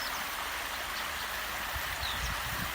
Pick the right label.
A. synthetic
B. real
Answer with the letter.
B